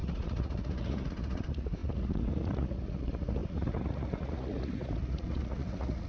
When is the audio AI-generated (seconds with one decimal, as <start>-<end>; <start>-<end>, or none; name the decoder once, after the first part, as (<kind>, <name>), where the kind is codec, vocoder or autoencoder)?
0.0-6.1 (vocoder, Vocos)